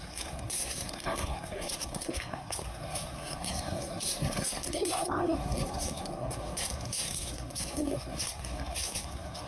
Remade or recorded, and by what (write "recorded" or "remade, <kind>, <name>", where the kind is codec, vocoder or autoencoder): remade, codec, SNAC